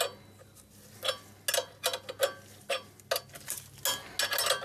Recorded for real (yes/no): yes